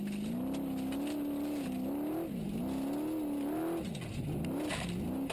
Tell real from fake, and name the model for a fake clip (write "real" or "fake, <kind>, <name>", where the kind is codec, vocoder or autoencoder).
real